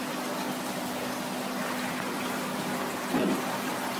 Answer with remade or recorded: recorded